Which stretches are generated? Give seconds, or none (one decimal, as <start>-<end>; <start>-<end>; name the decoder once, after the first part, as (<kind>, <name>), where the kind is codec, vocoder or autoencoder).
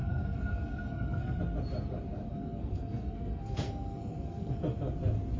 0.0-1.4 (codec, SNAC); 2.3-4.6